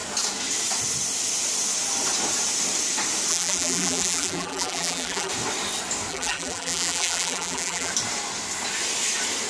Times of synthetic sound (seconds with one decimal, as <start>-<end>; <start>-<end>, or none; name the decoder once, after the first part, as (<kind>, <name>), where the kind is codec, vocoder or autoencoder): 3.3-5.3 (vocoder, BigVGAN v2); 6.1-7.9